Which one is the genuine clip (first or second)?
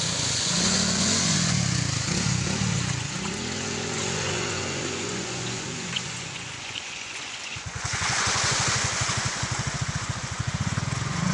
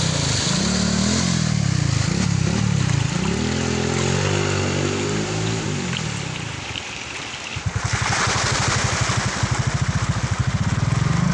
second